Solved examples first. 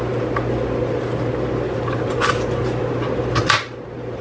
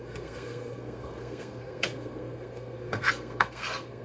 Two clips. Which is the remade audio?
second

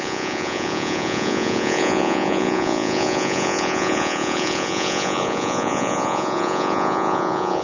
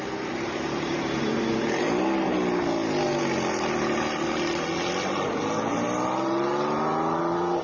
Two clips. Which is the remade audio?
first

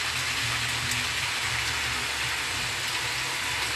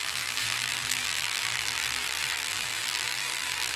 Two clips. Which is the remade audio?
second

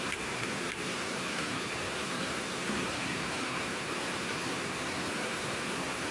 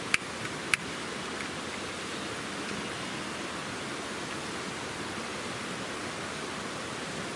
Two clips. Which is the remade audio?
first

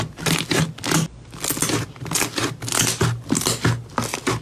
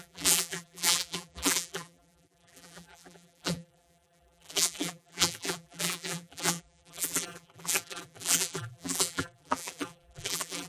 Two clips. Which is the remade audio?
second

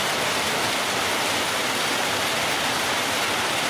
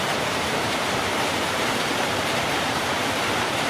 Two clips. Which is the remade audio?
second